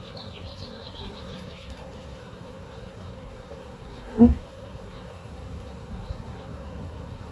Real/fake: fake